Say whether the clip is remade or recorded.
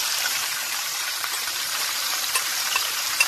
remade